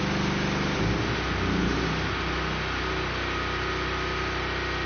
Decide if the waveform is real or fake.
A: real